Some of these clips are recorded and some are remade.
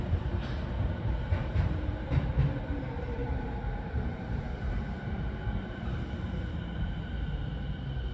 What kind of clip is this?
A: remade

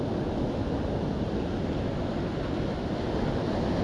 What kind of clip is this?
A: recorded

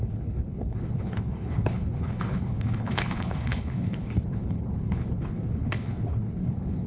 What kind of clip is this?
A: remade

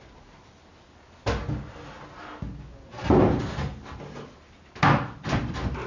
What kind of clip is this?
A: recorded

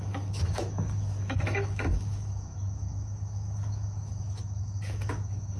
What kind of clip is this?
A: remade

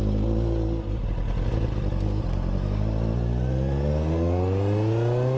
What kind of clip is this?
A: recorded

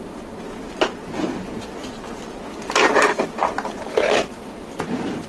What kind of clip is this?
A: recorded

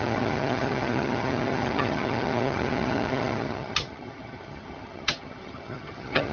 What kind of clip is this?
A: remade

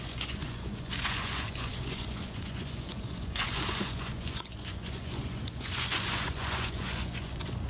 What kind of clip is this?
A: remade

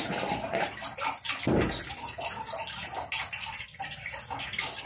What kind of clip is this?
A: recorded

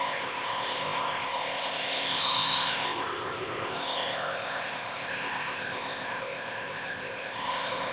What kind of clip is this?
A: remade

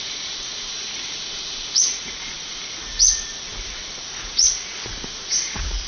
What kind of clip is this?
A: remade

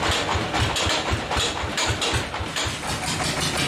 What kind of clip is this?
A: recorded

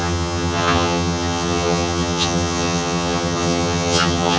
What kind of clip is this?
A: remade